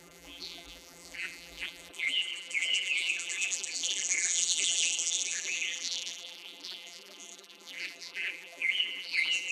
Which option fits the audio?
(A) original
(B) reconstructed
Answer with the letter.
B